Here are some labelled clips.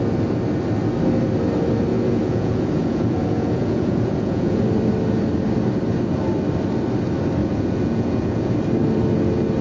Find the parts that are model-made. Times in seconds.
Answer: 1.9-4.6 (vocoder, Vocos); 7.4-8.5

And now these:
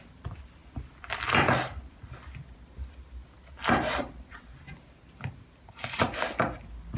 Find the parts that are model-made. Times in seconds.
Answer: none

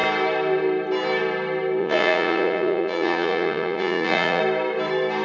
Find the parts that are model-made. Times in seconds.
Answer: 1.8-4.4 (vocoder, Vocos)

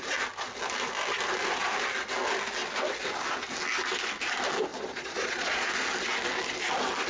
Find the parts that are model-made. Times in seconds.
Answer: 4.7-5.7 (vocoder, Vocos)

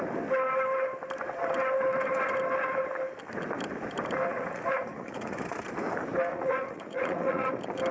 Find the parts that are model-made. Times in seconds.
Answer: 4.3-5.4 (vocoder, Vocos); 6.3-7.5